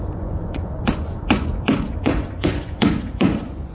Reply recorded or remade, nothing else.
remade